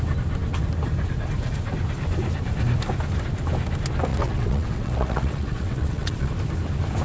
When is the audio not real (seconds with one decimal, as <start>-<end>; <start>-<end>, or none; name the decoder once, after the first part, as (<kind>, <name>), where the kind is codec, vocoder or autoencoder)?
4.1-6.3 (vocoder, WaveNeXt)